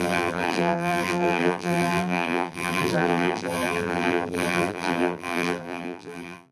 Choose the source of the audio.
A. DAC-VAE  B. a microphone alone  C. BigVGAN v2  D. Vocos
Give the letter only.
C